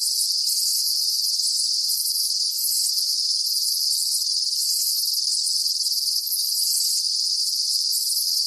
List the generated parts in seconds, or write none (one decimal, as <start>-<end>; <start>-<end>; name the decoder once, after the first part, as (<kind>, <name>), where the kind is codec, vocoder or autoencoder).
0.7-2.9 (vocoder, BigVGAN v2); 4.6-5.1